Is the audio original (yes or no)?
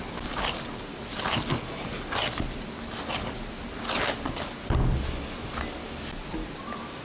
yes